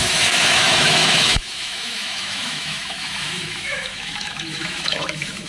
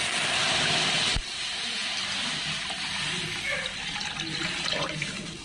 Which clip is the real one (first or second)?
second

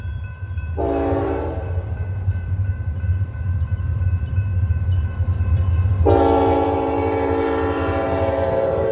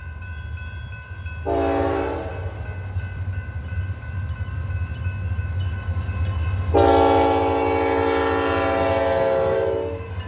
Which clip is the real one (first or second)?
second